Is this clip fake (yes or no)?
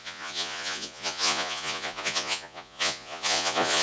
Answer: yes